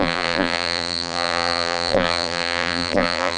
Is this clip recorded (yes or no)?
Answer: no